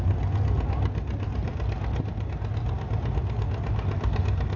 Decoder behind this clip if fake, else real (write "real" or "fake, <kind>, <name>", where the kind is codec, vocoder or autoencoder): real